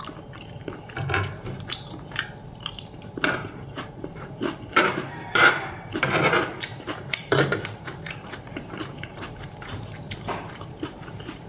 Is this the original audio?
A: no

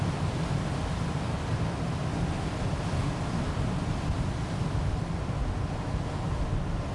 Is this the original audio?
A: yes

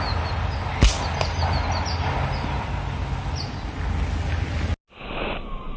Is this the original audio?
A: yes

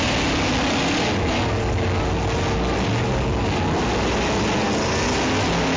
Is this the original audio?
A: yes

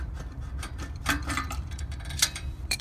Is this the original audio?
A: no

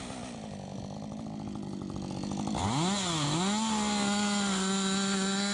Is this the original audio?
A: yes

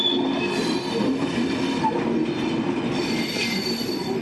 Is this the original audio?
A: yes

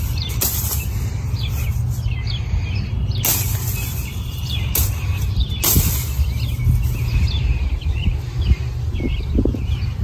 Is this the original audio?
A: yes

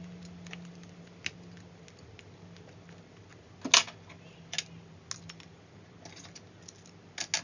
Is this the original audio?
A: yes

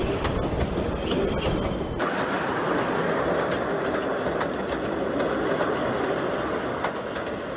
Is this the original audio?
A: yes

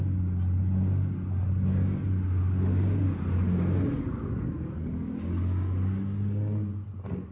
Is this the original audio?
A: yes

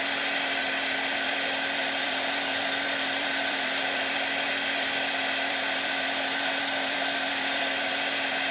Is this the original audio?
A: no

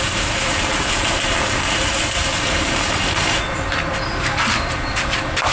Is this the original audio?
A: no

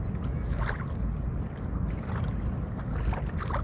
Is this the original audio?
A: yes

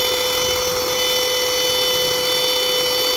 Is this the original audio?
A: yes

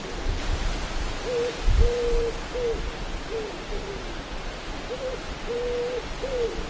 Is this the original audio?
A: yes